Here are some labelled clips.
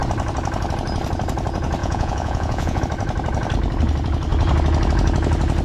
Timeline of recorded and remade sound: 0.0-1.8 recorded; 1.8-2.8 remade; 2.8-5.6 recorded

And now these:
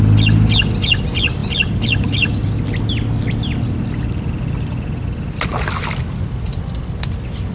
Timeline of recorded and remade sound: 0.0-7.5 recorded

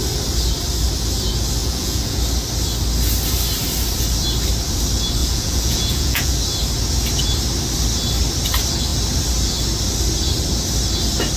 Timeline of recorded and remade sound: 0.0-1.6 recorded; 1.6-2.2 remade; 2.2-5.2 recorded; 5.2-6.3 remade; 6.3-11.4 recorded

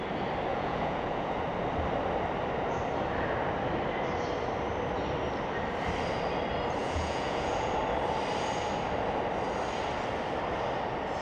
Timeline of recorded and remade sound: 0.0-0.5 recorded; 0.5-1.4 remade; 1.4-6.8 recorded; 6.8-7.8 remade; 7.8-11.2 recorded

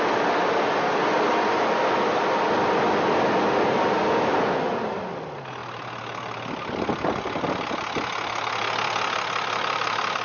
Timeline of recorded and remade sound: 0.0-10.2 recorded

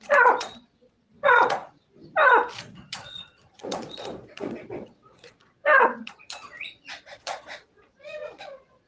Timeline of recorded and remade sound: 0.0-1.6 remade; 1.6-2.7 recorded; 2.7-8.9 remade